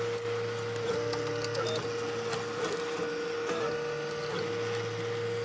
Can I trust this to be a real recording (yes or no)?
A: yes